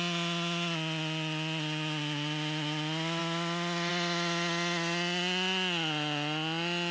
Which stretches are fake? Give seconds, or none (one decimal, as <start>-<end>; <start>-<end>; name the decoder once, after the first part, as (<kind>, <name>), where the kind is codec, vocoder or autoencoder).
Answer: none